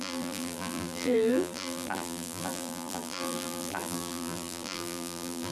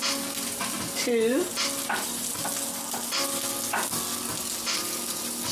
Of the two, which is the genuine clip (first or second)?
second